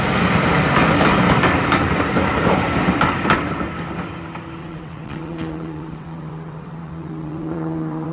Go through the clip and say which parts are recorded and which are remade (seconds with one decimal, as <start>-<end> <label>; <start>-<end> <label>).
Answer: 0.0-4.6 recorded; 4.6-8.1 remade